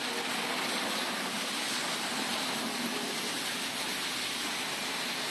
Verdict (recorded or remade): recorded